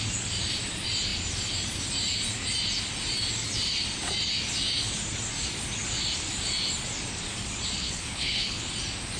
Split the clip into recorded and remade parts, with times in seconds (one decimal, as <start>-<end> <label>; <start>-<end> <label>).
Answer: 0.0-7.8 recorded; 7.8-8.7 remade; 8.7-9.2 recorded